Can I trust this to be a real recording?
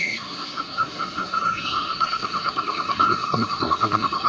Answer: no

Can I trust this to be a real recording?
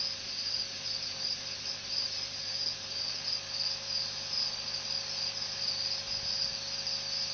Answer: yes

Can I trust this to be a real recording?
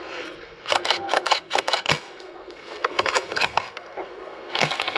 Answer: no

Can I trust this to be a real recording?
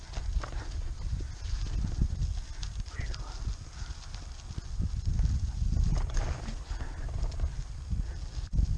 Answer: yes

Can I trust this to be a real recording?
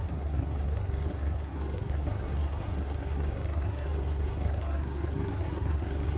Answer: no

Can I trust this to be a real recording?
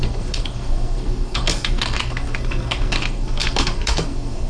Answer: no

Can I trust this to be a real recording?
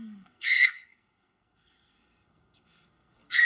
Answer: no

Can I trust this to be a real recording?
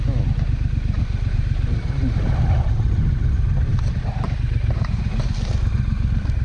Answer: yes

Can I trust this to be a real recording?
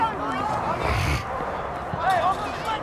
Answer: yes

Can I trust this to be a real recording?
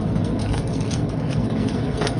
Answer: no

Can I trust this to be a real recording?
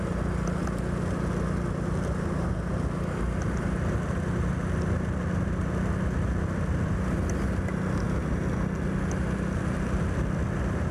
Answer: yes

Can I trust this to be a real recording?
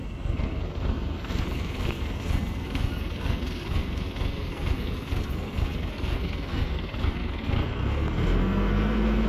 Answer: no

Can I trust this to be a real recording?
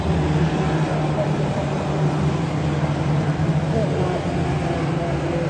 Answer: yes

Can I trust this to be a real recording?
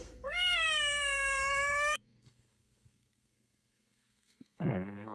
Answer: no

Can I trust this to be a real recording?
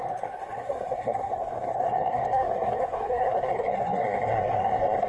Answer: no